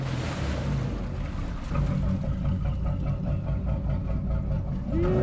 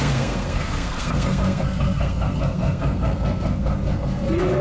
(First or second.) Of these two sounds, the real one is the first